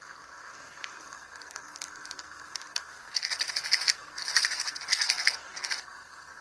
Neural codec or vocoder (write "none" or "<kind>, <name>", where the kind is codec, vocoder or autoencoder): codec, SNAC